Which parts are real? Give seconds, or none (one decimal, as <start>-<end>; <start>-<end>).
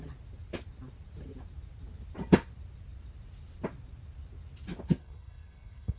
0.0-5.0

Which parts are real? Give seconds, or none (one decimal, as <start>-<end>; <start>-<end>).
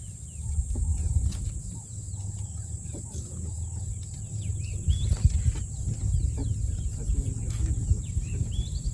0.0-8.9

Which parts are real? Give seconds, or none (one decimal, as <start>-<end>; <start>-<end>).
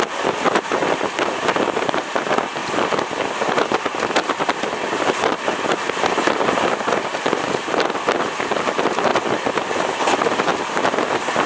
0.0-2.6; 5.5-9.1; 10.5-11.5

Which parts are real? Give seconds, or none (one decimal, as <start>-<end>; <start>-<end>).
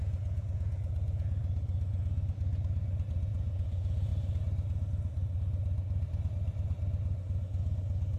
1.4-3.1; 4.1-8.2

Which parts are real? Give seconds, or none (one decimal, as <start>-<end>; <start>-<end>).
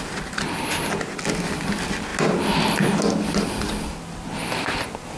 0.0-5.2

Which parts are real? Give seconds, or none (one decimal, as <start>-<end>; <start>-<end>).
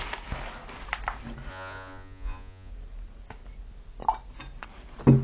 0.0-1.5; 2.7-5.2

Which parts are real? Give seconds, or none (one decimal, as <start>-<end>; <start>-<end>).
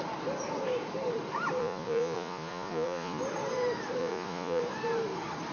0.0-1.6; 3.2-4.0; 4.6-5.5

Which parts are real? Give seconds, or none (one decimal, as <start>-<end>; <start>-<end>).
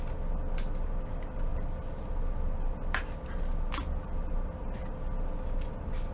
0.0-6.1